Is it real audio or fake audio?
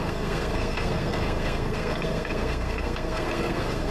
fake